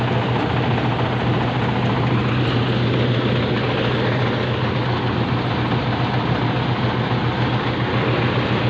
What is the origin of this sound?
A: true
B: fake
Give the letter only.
A